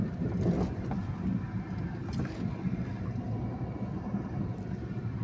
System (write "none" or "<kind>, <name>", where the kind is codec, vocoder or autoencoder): none